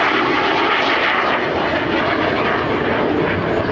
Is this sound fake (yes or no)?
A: no